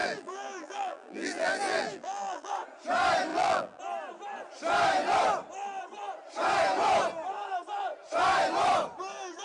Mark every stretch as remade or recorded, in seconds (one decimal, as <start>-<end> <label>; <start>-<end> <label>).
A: 0.0-2.5 remade; 2.5-3.3 recorded; 3.3-3.8 remade; 3.8-9.4 recorded